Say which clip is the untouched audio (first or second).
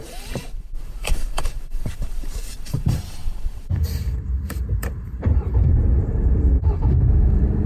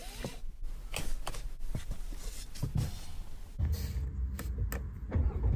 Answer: second